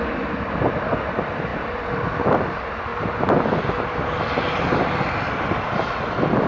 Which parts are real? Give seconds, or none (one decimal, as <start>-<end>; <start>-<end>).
1.5-2.0; 2.9-4.4